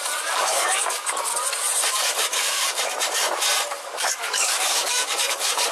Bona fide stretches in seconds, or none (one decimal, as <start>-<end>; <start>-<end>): 1.3-1.9; 2.9-3.7